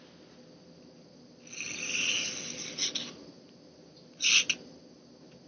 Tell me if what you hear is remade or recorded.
recorded